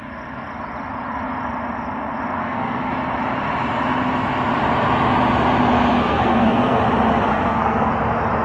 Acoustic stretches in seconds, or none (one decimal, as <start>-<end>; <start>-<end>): 0.0-2.4; 2.9-6.0; 6.8-7.3; 7.9-8.4